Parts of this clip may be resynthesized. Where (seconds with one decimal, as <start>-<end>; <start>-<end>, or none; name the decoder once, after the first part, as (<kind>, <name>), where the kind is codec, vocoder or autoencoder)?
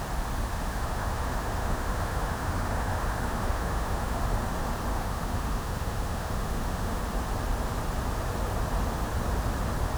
0.5-4.2 (autoencoder, DAC-VAE); 4.9-7.0